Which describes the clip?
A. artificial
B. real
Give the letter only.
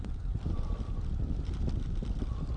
B